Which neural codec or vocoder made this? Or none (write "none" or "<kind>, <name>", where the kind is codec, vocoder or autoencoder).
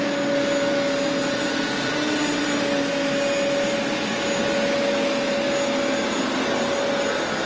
none